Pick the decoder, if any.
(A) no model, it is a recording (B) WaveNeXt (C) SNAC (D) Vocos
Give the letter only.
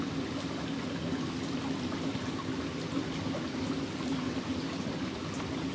A